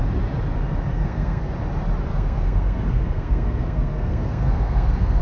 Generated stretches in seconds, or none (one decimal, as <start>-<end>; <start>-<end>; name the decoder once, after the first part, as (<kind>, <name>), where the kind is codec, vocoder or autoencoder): 0.9-1.5 (codec, SNAC); 2.1-5.2